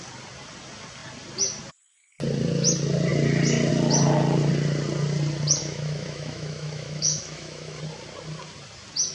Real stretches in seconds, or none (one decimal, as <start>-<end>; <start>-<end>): 0.0-5.6; 7.8-9.1